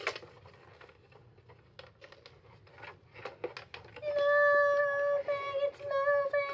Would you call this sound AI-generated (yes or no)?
no